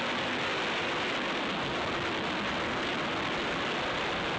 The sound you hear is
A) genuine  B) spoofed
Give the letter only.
A